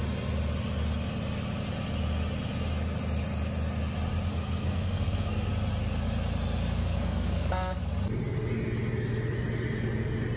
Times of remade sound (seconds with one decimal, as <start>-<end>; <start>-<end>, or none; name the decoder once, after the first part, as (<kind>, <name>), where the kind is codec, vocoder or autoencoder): 4.3-5.5 (codec, SNAC); 6.8-7.8